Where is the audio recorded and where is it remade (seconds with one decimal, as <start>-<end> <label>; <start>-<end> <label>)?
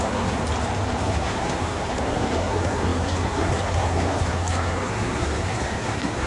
0.0-0.4 remade; 0.4-1.0 recorded; 1.0-6.3 remade